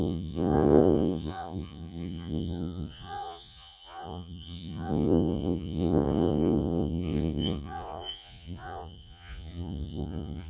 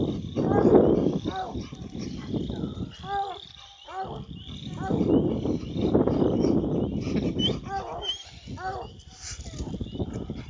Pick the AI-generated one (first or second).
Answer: first